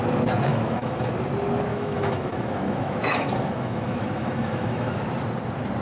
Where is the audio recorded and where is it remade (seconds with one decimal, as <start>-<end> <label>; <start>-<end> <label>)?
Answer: 0.0-0.5 recorded; 0.5-1.1 remade; 1.1-1.7 recorded; 1.7-5.0 remade; 5.0-5.8 recorded